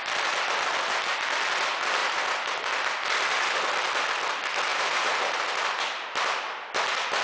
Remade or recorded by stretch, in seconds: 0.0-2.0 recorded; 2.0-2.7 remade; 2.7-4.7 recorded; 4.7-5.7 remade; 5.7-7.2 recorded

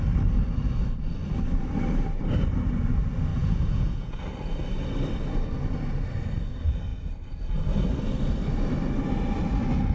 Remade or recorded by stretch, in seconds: 0.0-3.3 recorded; 3.3-4.2 remade; 4.2-9.9 recorded

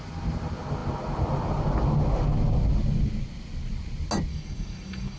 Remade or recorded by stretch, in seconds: 0.0-4.3 recorded; 4.3-5.2 remade